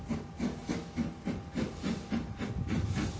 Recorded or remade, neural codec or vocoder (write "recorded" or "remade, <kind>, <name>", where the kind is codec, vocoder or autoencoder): recorded